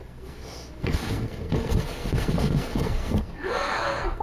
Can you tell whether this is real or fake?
fake